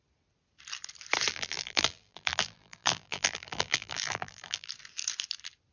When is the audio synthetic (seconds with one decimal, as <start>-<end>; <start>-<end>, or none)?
1.3-4.7